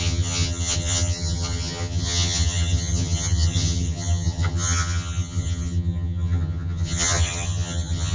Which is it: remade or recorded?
remade